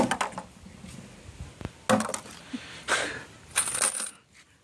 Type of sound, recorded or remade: recorded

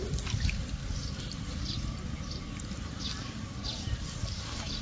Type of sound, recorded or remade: recorded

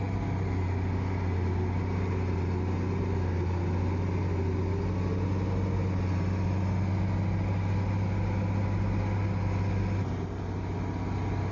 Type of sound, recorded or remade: recorded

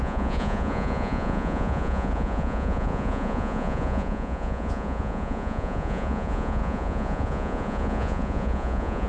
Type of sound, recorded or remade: remade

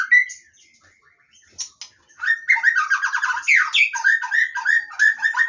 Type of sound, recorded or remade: recorded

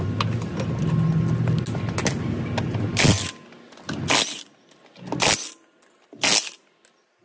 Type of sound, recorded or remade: recorded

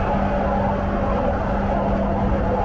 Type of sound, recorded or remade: recorded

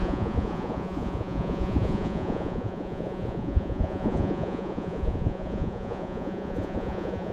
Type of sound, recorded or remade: remade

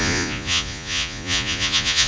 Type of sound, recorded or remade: remade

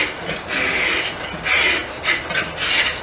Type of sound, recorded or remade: recorded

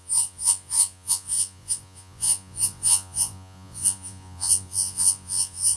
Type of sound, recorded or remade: remade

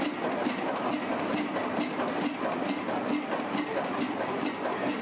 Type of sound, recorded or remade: recorded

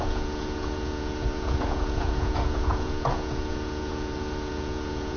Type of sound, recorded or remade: remade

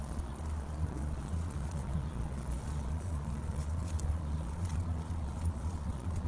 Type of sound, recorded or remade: remade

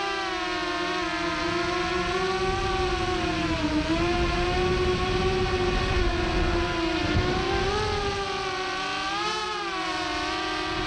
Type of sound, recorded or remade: recorded